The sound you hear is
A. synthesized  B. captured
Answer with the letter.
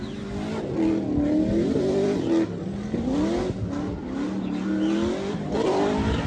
B